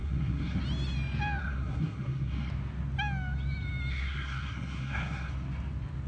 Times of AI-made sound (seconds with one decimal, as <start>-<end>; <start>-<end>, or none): 0.0-0.6; 1.4-2.5; 3.9-5.3